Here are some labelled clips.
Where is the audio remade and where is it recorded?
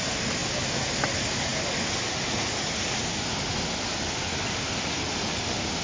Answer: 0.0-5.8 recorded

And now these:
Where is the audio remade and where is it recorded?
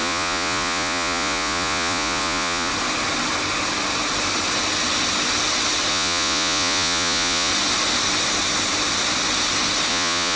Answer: 0.0-2.7 remade; 2.7-5.9 recorded; 5.9-7.5 remade; 7.5-9.9 recorded; 9.9-10.4 remade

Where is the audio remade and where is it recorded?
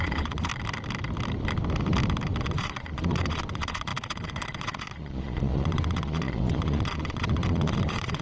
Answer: 0.0-0.5 remade; 0.5-2.4 recorded; 2.4-8.2 remade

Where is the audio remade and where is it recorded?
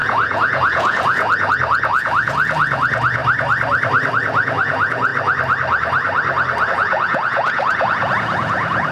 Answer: 0.0-3.2 remade; 3.2-4.1 recorded; 4.1-5.1 remade; 5.1-6.7 recorded; 6.7-8.9 remade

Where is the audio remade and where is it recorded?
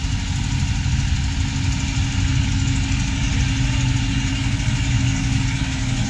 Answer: 0.0-2.3 recorded; 2.3-3.3 remade; 3.3-4.0 recorded; 4.0-6.1 remade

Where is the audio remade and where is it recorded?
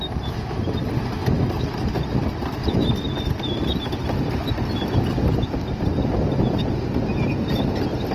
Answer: 0.0-1.2 recorded; 1.2-1.9 remade; 1.9-2.4 recorded; 2.4-4.8 remade; 4.8-8.1 recorded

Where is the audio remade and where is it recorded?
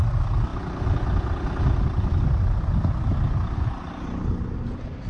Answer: 0.0-5.1 recorded